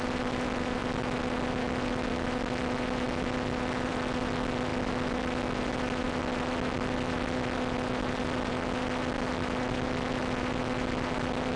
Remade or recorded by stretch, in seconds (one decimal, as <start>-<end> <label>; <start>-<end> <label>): 0.0-11.6 recorded